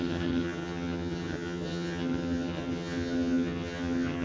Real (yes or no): no